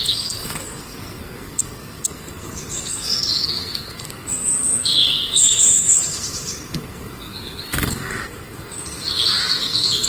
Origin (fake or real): fake